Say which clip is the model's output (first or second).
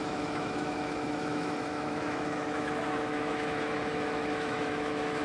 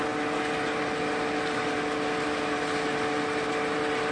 first